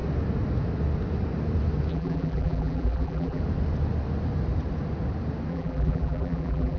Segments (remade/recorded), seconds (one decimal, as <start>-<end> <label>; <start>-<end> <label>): 0.0-1.9 recorded; 1.9-3.4 remade; 3.4-5.5 recorded; 5.5-6.8 remade